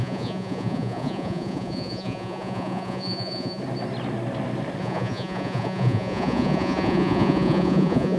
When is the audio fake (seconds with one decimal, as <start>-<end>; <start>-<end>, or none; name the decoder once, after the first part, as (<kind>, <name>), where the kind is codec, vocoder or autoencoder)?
0.0-3.6 (vocoder, Vocos); 4.8-8.2